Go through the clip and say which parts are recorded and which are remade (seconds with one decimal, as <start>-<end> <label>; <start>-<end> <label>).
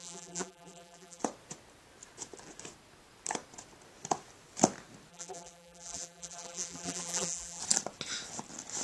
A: 0.0-1.2 remade; 1.2-5.1 recorded; 5.1-7.6 remade; 7.6-8.8 recorded